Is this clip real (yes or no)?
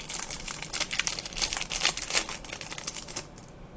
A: yes